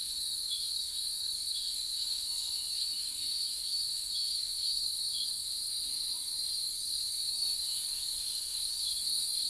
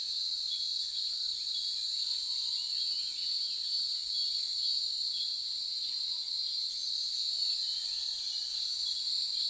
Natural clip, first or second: second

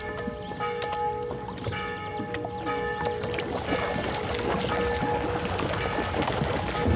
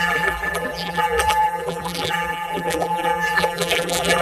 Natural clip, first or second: first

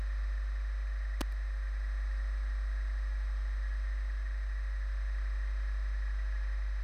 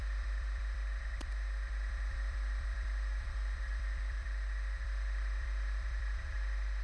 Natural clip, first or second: first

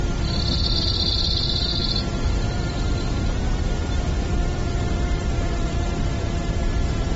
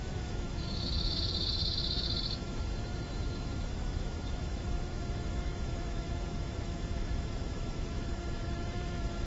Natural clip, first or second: first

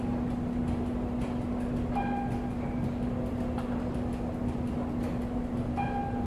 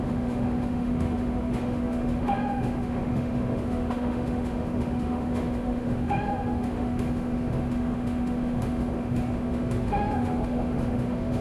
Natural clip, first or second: first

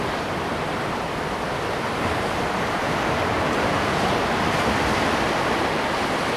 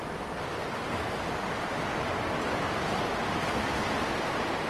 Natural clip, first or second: second